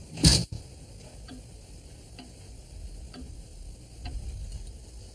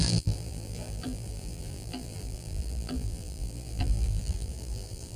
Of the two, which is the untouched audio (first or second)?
first